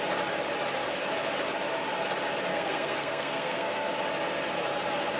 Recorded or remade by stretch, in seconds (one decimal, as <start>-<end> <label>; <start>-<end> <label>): 0.0-2.5 recorded; 2.5-3.9 remade; 3.9-5.2 recorded